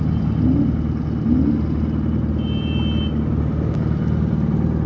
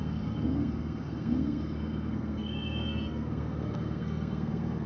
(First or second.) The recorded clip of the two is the first